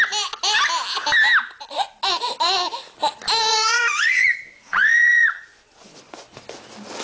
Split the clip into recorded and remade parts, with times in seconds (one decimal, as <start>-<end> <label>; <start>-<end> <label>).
0.0-3.5 recorded; 3.5-6.6 remade; 6.6-7.0 recorded